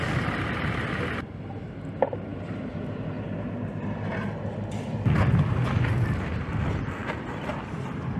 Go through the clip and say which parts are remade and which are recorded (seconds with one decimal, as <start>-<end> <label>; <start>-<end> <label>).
0.0-8.2 recorded